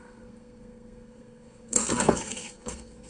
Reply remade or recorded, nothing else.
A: remade